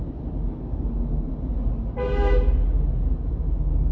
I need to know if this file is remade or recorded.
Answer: recorded